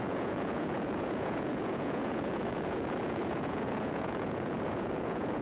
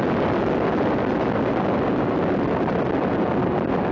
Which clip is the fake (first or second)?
first